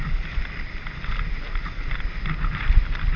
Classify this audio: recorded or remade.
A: recorded